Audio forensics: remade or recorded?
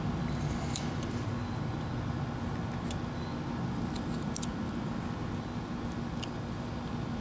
recorded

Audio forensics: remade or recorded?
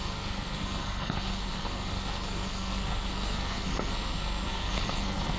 remade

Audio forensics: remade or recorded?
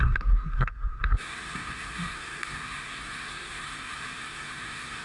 remade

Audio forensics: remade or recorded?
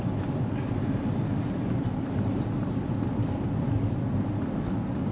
recorded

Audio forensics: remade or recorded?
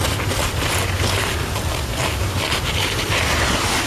recorded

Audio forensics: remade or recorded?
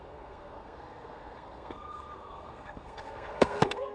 remade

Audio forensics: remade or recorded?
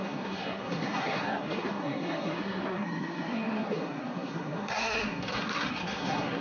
remade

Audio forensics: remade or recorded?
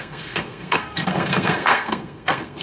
remade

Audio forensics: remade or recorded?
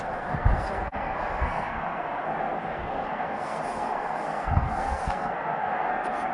remade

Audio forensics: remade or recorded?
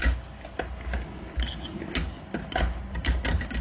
recorded